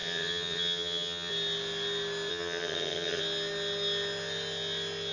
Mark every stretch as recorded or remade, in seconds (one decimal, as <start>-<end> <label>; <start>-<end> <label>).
0.0-1.3 remade; 1.3-2.3 recorded; 2.3-3.2 remade; 3.2-5.1 recorded